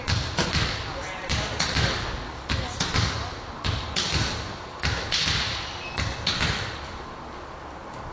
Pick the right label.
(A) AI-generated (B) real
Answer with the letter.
B